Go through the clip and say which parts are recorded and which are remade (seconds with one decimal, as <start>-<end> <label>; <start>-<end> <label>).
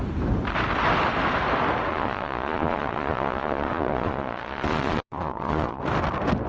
0.0-1.9 recorded; 1.9-5.8 remade; 5.8-6.5 recorded